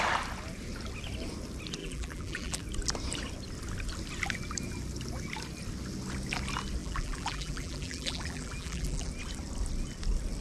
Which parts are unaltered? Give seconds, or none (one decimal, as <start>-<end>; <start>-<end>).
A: 0.0-1.8; 2.6-6.8; 9.1-10.4